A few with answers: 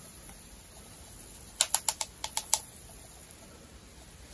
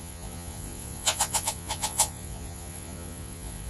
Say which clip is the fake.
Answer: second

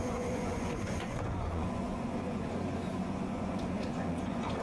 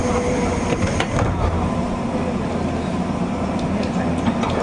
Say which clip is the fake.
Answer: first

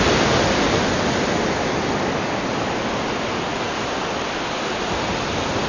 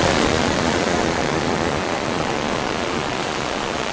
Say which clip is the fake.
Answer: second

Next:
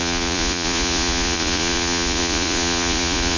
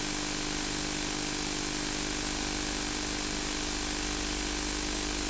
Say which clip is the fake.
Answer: first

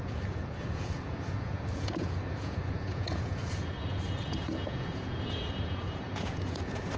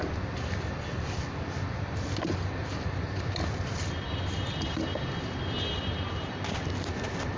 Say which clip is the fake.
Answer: first